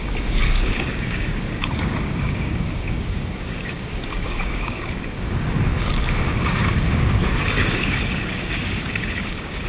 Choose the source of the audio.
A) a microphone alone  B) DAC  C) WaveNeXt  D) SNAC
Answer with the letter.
B